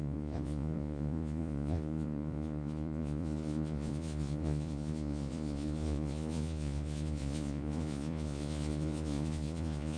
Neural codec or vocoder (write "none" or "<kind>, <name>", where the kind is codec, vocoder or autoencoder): vocoder, Vocos